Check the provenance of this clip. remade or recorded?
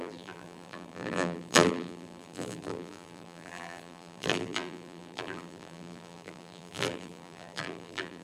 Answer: remade